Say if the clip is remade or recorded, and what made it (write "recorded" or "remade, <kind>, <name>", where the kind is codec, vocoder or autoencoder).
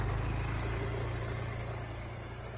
recorded